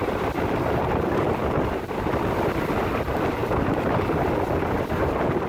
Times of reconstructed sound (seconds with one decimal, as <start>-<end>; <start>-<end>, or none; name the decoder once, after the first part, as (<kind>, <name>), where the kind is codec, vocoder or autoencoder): 0.0-3.4 (vocoder, BigVGAN v2); 4.6-5.5